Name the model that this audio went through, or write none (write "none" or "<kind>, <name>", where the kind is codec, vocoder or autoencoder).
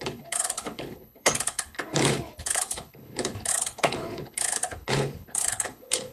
codec, HILCodec